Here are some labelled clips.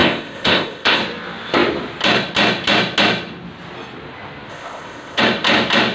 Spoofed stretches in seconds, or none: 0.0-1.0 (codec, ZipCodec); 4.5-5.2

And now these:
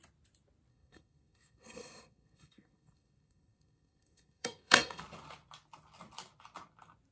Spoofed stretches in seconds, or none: 0.7-5.0 (codec, SNAC)